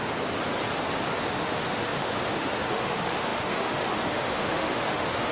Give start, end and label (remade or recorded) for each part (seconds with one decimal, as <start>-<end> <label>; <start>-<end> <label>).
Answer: 0.0-1.3 recorded; 1.3-5.3 remade